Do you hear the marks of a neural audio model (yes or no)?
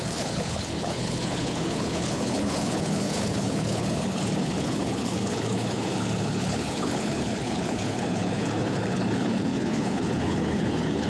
yes